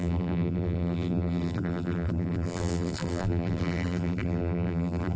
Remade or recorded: remade